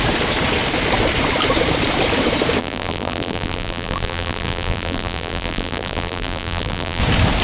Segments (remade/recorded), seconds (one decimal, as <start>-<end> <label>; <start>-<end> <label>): 0.0-2.6 recorded; 2.6-7.0 remade; 7.0-7.4 recorded